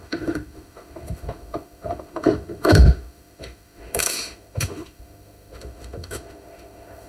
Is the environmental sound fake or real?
fake